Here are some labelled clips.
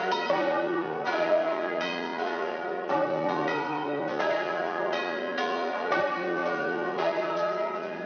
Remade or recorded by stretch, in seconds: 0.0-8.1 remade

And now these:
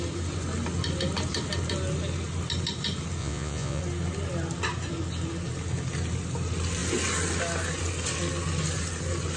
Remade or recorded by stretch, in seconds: 0.0-3.2 recorded; 3.2-3.8 remade; 3.8-9.4 recorded

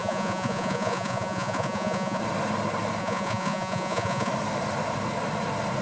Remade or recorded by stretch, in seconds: 0.0-2.2 remade; 2.2-3.0 recorded; 3.0-4.3 remade; 4.3-5.8 recorded